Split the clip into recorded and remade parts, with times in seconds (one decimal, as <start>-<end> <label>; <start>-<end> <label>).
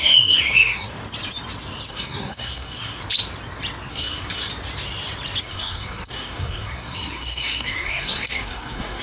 0.0-0.9 remade; 0.9-1.9 recorded; 1.9-3.0 remade; 3.0-3.9 recorded; 3.9-4.5 remade; 4.5-5.4 recorded; 5.4-9.0 remade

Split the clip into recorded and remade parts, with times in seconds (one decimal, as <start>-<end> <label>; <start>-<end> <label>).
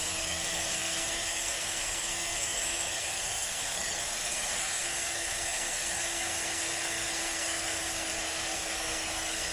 0.0-9.5 remade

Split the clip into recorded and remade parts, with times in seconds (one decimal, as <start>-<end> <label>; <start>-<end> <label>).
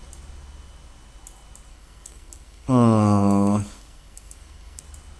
0.0-1.7 recorded; 1.7-4.8 remade; 4.8-5.2 recorded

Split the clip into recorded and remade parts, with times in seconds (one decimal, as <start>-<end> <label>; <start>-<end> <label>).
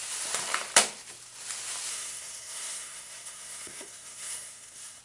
0.0-1.9 recorded; 1.9-5.0 remade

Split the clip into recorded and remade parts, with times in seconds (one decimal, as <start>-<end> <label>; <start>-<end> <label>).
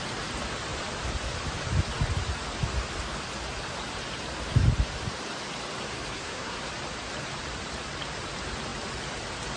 0.0-6.1 recorded; 6.1-6.7 remade; 6.7-9.6 recorded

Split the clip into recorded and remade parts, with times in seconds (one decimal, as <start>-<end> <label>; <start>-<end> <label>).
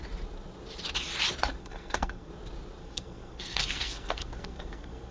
0.0-1.6 recorded; 1.6-2.3 remade; 2.3-2.8 recorded; 2.8-5.1 remade